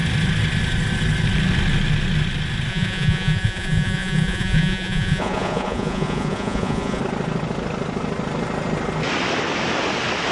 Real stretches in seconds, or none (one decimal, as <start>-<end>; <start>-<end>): 0.0-2.7; 7.0-10.3